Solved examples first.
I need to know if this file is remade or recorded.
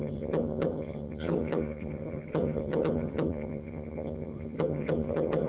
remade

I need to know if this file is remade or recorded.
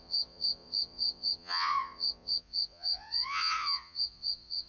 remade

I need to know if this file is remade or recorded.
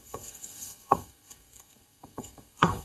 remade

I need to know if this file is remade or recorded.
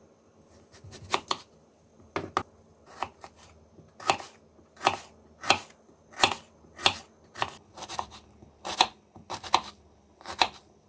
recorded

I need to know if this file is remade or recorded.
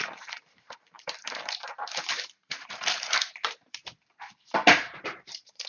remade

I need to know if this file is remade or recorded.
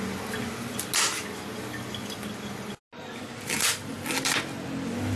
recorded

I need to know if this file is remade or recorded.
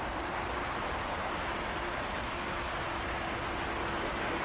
recorded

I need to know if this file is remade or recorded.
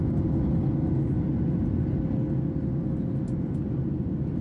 recorded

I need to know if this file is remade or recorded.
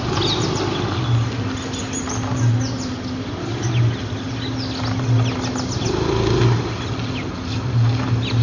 recorded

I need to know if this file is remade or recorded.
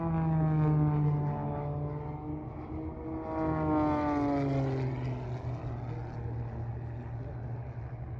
recorded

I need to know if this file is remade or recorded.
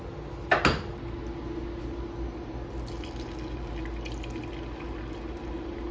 recorded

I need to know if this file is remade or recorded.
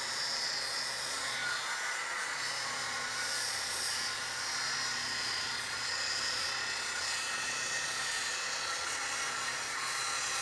remade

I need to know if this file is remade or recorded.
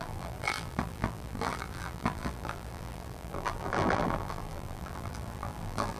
remade